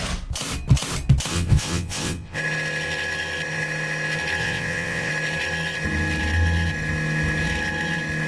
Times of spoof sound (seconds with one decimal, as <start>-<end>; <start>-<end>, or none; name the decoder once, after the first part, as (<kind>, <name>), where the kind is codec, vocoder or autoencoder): 1.3-2.4 (vocoder, WaveNeXt); 4.4-5.1